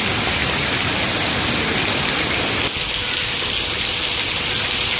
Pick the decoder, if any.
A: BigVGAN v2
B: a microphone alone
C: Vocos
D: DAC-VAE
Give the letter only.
B